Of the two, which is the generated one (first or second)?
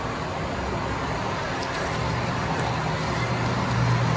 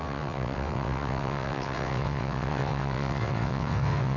second